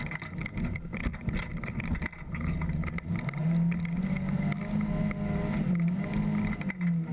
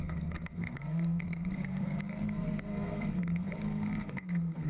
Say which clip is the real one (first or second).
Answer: first